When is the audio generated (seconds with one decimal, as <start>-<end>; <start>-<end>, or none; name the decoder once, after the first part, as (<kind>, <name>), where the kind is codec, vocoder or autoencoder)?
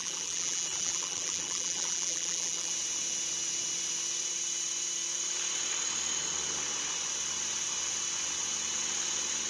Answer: 0.0-2.7 (vocoder, BigVGAN v2)